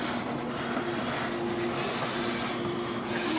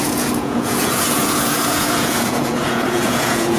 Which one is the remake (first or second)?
second